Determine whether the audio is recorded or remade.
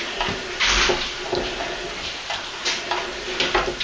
recorded